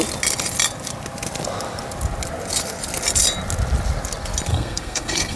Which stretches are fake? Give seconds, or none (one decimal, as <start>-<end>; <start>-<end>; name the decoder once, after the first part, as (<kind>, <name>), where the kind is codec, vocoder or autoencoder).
4.5-5.4 (codec, SNAC)